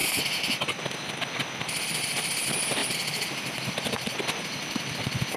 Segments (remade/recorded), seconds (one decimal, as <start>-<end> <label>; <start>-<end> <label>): 0.0-0.8 remade; 0.8-2.8 recorded; 2.8-4.9 remade; 4.9-5.4 recorded